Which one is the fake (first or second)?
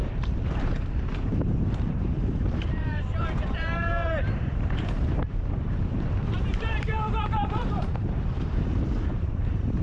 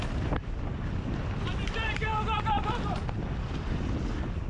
first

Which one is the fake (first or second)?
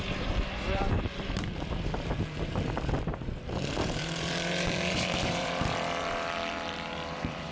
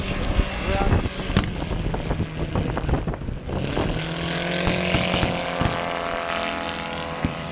first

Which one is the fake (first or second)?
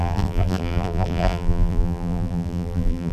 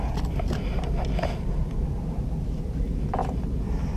first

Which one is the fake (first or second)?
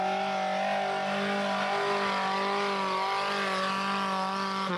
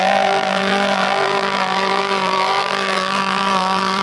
second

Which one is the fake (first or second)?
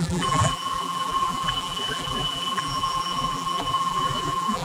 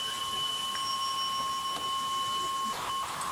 first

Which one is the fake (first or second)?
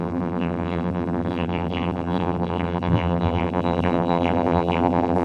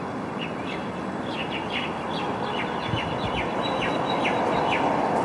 first